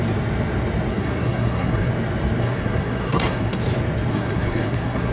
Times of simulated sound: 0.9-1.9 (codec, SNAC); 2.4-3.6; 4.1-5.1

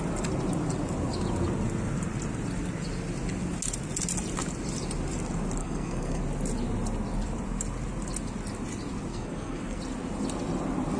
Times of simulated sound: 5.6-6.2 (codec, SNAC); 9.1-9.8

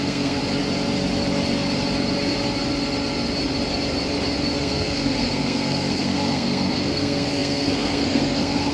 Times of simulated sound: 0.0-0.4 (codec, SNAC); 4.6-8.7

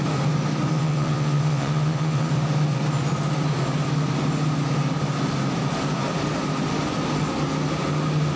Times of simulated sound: 0.7-2.3 (vocoder, WaveNeXt)

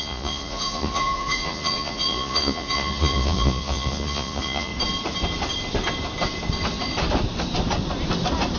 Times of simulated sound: 0.0-4.7 (vocoder, Vocos)

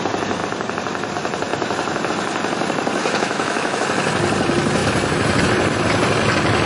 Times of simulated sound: 3.0-3.8 (autoencoder, DAC-VAE)

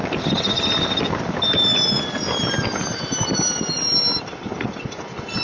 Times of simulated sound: none

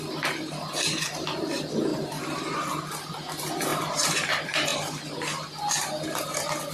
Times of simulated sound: 1.9-2.9 (vocoder, BigVGAN v2); 3.7-4.3